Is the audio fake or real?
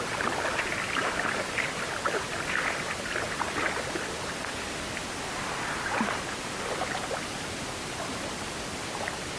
real